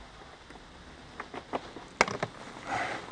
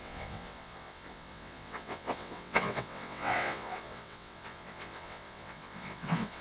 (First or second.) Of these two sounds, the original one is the first